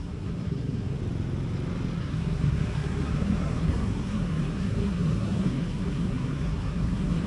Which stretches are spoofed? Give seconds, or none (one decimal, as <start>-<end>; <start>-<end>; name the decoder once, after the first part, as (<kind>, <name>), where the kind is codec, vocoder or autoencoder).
0.0-1.0 (codec, SNAC); 2.0-7.3